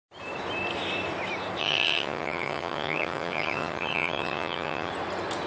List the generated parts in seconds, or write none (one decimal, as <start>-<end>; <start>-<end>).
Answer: 1.6-4.9